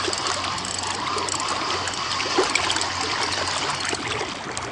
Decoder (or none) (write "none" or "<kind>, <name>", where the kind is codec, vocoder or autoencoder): none